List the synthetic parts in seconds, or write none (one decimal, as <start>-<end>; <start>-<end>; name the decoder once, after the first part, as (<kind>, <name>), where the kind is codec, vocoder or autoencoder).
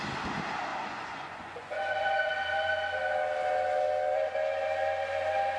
0.7-2.3 (vocoder, Vocos)